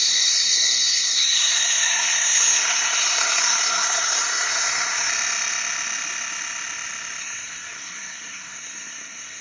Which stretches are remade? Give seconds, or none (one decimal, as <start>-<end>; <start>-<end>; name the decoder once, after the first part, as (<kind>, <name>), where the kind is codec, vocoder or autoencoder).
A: 0.0-5.1 (codec, SNAC); 7.2-9.4